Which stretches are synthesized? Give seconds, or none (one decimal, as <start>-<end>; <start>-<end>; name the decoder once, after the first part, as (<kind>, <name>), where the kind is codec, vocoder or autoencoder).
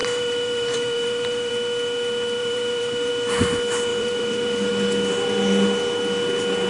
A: 0.0-1.5 (vocoder, BigVGAN v2); 2.4-3.1; 3.9-4.7